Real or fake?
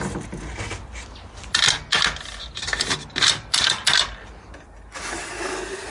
real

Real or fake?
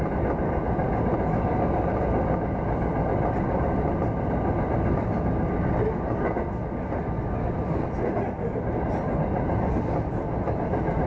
real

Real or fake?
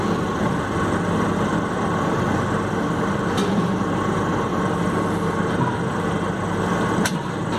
fake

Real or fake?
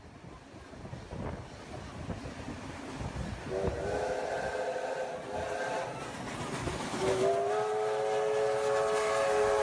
real